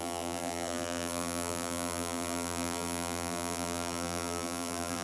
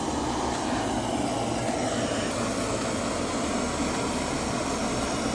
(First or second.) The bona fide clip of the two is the second